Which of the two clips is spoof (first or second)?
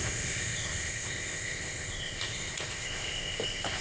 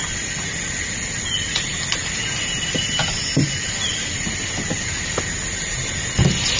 first